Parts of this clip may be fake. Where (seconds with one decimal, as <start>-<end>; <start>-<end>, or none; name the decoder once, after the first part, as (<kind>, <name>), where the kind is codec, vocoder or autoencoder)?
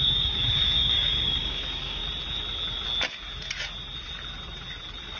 0.0-2.0 (codec, DAC)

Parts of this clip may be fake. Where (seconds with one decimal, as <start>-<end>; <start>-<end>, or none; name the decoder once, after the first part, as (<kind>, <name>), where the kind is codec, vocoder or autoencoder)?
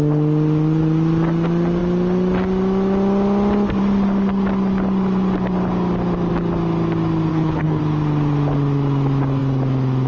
7.3-7.8 (codec, HILCodec)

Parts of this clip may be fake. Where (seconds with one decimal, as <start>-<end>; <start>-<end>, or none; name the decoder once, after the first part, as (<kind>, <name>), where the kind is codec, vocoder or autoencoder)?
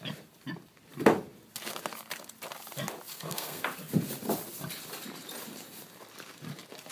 3.1-3.6 (codec, SNAC)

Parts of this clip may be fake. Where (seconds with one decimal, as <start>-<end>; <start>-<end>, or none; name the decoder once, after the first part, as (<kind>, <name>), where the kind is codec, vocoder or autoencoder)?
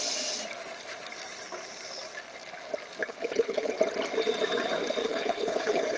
3.0-3.7 (codec, HILCodec); 5.0-6.0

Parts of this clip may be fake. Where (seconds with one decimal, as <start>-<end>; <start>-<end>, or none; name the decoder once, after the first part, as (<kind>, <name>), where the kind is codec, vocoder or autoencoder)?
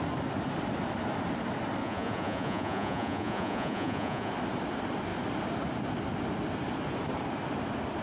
1.8-4.3 (vocoder, Vocos)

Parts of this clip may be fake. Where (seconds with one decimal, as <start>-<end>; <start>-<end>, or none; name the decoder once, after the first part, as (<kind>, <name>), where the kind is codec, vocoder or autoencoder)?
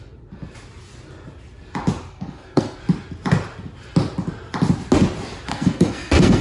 2.1-2.8 (codec, SNAC); 5.5-6.4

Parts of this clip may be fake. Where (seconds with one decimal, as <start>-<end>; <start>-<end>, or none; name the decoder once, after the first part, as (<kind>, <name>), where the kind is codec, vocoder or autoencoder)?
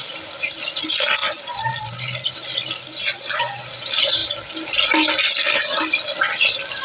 none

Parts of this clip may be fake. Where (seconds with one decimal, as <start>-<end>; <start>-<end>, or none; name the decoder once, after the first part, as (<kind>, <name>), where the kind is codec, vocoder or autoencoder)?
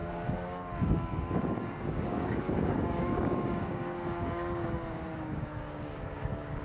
0.0-6.6 (codec, DAC)